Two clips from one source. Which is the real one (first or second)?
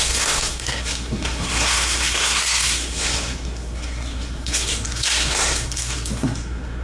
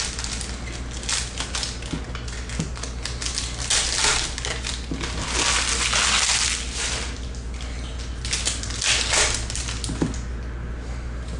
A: second